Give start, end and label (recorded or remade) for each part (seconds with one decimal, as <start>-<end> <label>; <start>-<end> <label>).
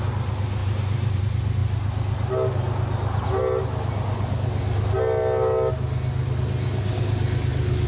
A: 0.0-0.6 recorded; 0.6-1.2 remade; 1.2-7.9 recorded